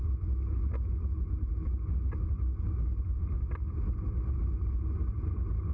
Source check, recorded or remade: recorded